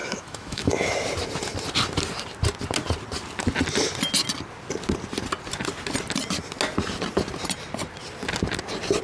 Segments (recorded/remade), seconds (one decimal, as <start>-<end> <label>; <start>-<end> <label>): 0.0-0.9 remade; 0.9-9.0 recorded